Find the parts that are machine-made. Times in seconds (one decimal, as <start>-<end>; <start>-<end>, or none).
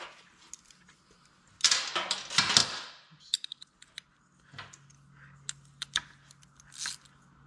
none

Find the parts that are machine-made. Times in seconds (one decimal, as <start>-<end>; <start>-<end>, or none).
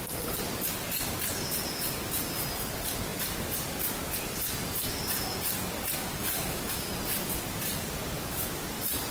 6.2-6.9